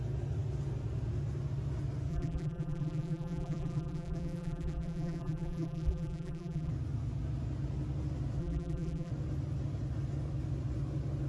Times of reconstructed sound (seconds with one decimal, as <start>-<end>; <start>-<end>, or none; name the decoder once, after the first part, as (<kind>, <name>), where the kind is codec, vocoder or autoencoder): 2.1-6.7 (vocoder, BigVGAN v2); 8.4-9.1